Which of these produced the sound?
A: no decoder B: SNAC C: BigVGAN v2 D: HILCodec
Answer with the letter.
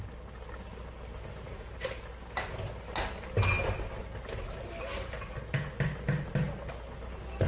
A